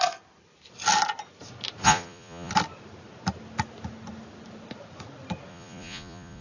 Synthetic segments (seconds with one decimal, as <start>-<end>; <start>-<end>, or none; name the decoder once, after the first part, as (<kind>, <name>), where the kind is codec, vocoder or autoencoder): 1.8-2.5 (vocoder, Vocos); 5.5-6.4